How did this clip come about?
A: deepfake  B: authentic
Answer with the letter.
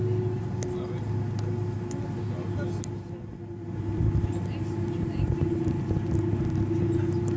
B